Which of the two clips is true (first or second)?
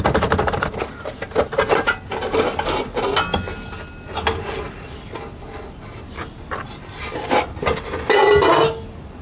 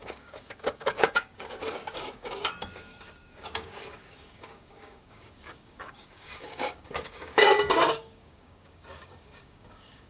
first